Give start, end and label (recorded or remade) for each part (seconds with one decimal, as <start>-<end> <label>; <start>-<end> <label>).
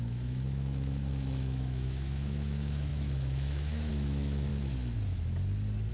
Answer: 0.0-4.5 remade; 4.5-5.9 recorded